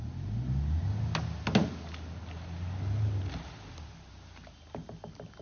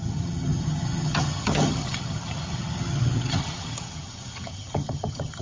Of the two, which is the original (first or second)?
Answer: first